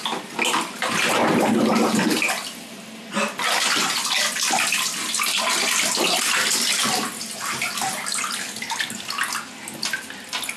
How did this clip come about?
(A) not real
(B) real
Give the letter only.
B